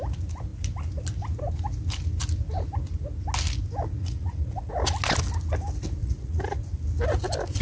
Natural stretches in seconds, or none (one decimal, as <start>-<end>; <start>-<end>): 0.0-4.0; 4.7-6.0; 6.6-7.6